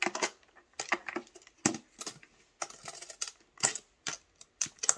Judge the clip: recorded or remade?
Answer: recorded